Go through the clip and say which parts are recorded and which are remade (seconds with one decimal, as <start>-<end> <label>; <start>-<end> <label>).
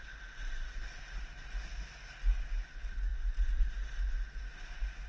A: 0.0-5.1 recorded